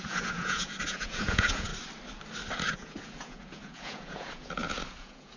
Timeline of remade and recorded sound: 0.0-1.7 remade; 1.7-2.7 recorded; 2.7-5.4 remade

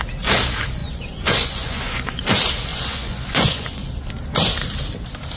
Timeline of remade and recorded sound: 0.0-0.8 recorded; 0.8-2.2 remade; 2.2-2.7 recorded; 2.7-3.9 remade; 3.9-5.4 recorded

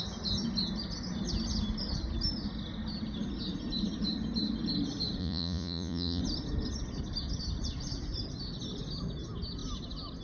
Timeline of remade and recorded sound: 0.0-5.2 recorded; 5.2-6.2 remade; 6.2-10.2 recorded

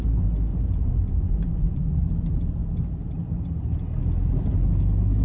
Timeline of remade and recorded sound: 0.0-0.5 recorded; 0.5-2.1 remade; 2.1-5.2 recorded

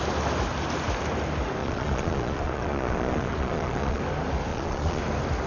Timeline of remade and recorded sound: 0.0-1.6 recorded; 1.6-4.0 remade; 4.0-4.5 recorded; 4.5-5.0 remade; 5.0-5.5 recorded

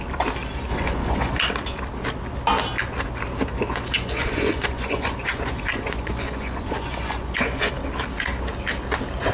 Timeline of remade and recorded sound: 0.0-0.7 recorded; 0.7-1.4 remade; 1.4-3.5 recorded; 3.5-7.7 remade; 7.7-9.3 recorded